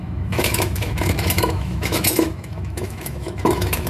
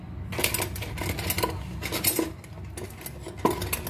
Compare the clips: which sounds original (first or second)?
second